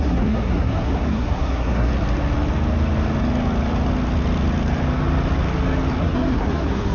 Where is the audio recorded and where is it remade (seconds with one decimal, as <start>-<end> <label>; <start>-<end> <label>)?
0.0-1.9 remade; 1.9-6.0 recorded; 6.0-6.9 remade